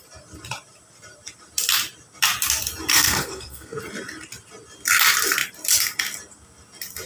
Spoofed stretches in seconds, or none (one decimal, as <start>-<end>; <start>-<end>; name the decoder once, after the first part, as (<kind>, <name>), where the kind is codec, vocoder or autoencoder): 2.9-3.8 (codec, SNAC)